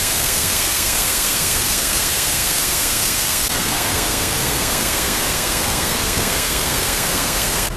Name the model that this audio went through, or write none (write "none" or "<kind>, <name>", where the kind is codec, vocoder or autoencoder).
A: codec, SNAC